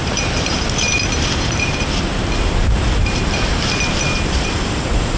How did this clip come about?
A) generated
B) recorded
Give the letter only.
A